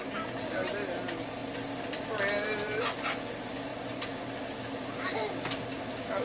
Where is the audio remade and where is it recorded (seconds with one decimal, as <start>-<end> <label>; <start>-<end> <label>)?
0.0-6.2 recorded